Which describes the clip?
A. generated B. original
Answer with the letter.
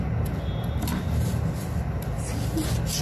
B